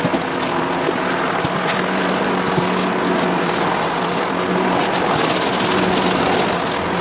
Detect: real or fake real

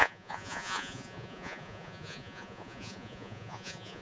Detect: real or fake fake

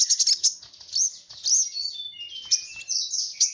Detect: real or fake real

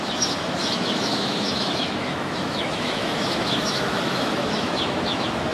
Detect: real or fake fake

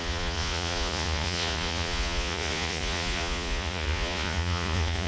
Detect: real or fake fake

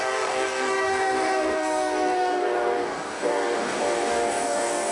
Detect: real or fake fake